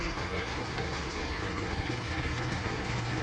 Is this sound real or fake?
fake